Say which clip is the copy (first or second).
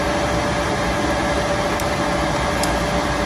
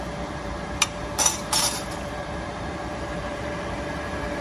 second